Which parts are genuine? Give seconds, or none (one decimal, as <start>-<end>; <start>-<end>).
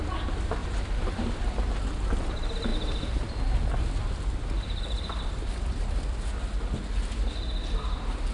0.0-0.6; 1.3-8.3